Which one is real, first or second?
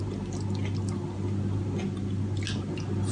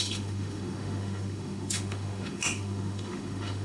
first